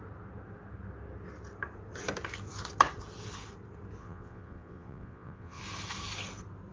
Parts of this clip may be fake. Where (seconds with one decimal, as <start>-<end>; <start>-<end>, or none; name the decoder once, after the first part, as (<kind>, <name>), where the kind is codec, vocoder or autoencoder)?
4.0-5.6 (vocoder, Vocos)